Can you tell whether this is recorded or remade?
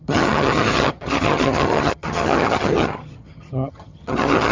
remade